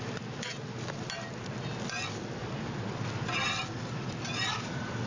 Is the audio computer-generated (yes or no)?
no